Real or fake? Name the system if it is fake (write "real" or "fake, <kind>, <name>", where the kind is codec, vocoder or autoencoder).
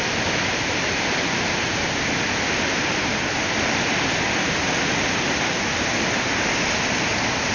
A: real